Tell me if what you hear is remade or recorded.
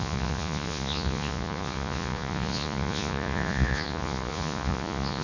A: remade